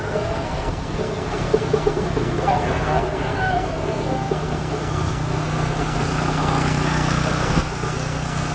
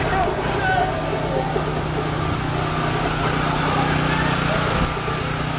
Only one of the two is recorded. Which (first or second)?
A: second